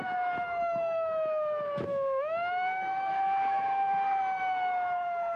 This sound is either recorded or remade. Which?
remade